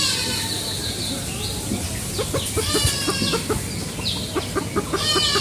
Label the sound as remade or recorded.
recorded